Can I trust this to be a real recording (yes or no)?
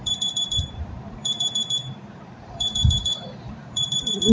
no